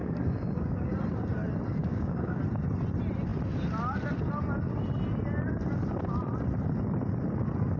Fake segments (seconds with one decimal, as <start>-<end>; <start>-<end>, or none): 0.0-0.9; 1.8-2.4